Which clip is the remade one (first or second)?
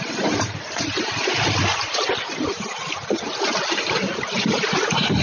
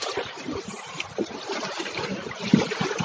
second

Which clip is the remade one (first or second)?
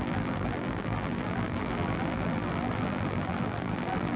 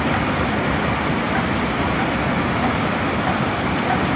first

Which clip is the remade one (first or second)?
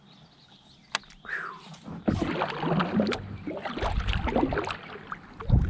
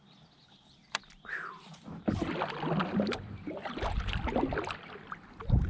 second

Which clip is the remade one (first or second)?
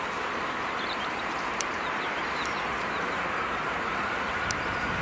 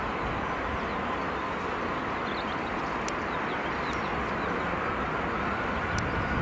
first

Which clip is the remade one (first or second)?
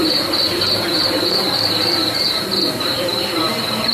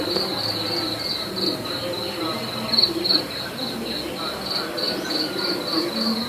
first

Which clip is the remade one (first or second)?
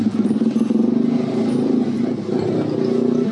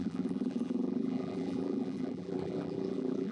second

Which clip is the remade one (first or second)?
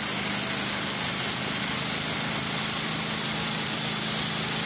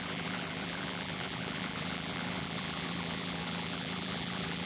second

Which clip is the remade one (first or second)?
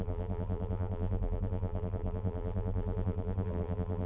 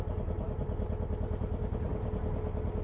first